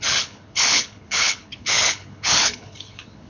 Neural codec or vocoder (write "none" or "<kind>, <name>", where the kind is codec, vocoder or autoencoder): codec, HILCodec